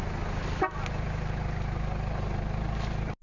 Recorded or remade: recorded